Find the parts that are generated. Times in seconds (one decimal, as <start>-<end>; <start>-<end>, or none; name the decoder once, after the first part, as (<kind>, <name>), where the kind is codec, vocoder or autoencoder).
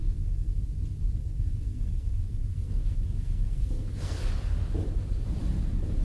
0.0-0.6 (codec, SNAC); 1.2-4.3